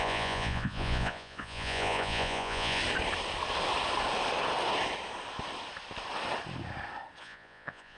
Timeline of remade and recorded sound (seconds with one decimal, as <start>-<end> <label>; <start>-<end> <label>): 0.0-2.8 remade; 2.8-7.2 recorded; 7.2-8.0 remade